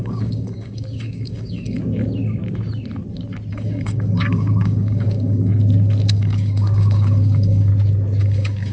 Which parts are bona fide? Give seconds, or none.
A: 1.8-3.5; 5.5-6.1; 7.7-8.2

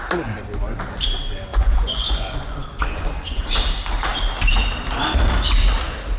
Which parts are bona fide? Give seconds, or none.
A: 0.0-1.5; 3.4-6.2

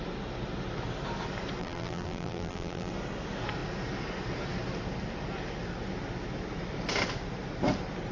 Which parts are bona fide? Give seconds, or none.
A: 0.0-1.6; 2.9-8.1

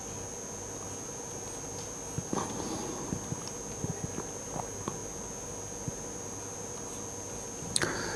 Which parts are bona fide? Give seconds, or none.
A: 0.0-8.2